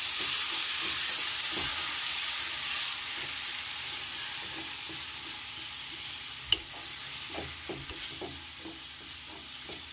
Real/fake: real